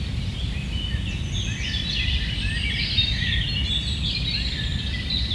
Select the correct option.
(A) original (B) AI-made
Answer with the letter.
A